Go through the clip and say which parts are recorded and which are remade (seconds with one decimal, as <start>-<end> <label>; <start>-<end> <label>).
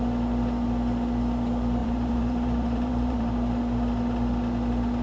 0.0-1.8 recorded; 1.8-3.3 remade; 3.3-5.0 recorded